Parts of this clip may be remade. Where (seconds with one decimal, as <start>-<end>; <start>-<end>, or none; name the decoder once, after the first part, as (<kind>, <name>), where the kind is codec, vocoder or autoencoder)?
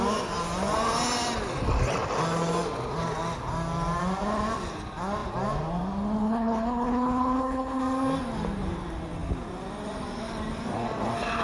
6.2-7.8 (codec, HILCodec)